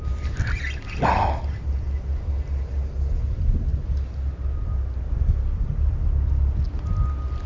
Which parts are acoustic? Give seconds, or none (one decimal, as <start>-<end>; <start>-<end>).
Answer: 0.0-7.5